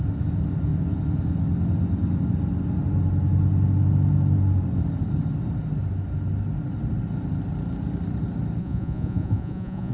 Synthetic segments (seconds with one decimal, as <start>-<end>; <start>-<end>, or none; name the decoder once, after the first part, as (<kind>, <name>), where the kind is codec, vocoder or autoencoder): 8.6-9.9 (vocoder, Vocos)